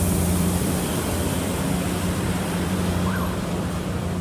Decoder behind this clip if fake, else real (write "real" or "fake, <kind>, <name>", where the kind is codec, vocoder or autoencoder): fake, vocoder, BigVGAN v2